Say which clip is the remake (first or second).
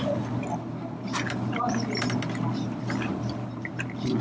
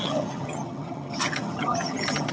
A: second